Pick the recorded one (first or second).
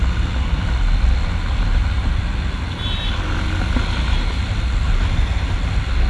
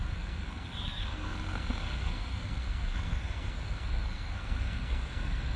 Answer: first